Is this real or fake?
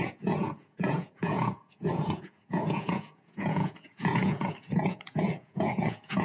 fake